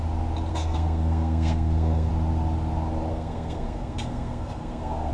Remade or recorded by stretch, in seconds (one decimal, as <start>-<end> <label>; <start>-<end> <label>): 0.0-0.5 recorded; 0.5-2.1 remade; 2.1-3.1 recorded; 3.1-5.1 remade